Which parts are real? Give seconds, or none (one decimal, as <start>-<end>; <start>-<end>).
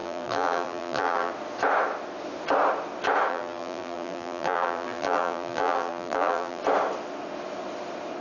1.3-3.3; 6.6-8.2